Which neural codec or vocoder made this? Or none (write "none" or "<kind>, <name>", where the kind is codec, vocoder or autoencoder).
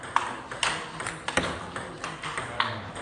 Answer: none